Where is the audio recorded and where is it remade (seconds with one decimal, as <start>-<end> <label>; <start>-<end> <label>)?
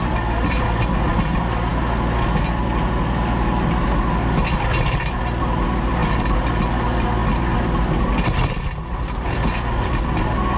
0.0-10.6 recorded